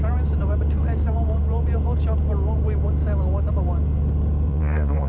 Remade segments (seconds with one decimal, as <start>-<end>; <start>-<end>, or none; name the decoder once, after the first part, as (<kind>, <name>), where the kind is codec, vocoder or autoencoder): 4.5-5.1 (vocoder, Vocos)